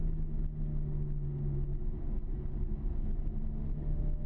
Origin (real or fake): real